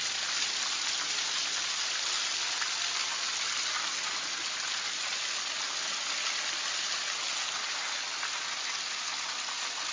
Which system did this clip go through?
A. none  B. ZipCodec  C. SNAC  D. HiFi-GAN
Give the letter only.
A